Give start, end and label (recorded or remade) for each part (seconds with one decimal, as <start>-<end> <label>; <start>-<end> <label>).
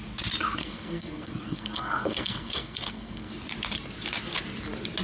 0.0-0.6 recorded; 0.6-3.3 remade; 3.3-5.0 recorded